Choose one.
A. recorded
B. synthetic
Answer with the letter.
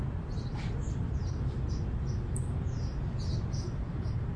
A